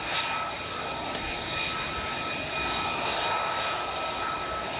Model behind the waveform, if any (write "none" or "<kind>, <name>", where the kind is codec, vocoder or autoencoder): none